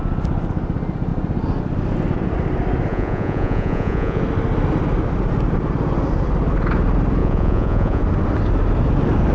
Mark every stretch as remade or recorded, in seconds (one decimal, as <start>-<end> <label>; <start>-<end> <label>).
0.0-2.9 recorded; 2.9-4.2 remade; 4.2-7.2 recorded; 7.2-8.0 remade; 8.0-9.3 recorded